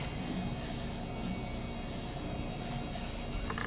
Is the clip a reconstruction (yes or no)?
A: no